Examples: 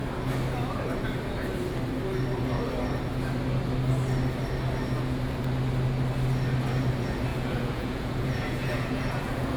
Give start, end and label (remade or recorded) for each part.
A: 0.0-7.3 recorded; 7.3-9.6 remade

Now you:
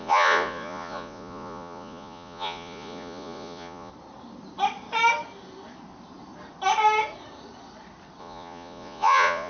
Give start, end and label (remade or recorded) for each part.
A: 0.0-3.9 remade; 3.9-8.2 recorded; 8.2-9.5 remade

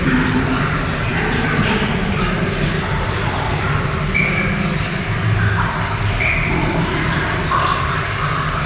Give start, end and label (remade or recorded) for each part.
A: 0.0-8.7 recorded

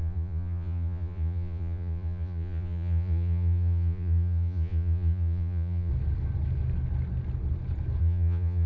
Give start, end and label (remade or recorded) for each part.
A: 0.0-5.9 remade; 5.9-8.0 recorded; 8.0-8.7 remade